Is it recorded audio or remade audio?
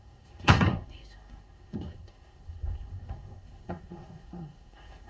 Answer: remade